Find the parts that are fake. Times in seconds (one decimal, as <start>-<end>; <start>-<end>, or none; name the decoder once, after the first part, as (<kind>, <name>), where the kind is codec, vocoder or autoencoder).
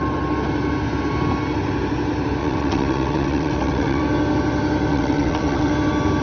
2.4-4.0 (vocoder, WaveNeXt); 4.9-5.7